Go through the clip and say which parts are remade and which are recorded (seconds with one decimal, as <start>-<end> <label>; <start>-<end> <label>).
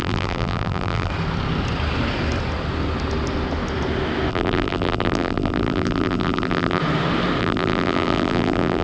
0.0-1.1 remade; 1.1-4.3 recorded; 4.3-6.8 remade; 6.8-7.4 recorded; 7.4-8.8 remade